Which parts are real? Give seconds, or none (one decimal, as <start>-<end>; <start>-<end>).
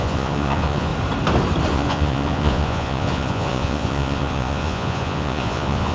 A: 0.9-1.7